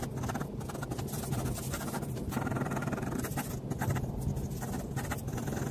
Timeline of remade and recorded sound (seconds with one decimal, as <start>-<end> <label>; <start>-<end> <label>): 0.0-5.7 recorded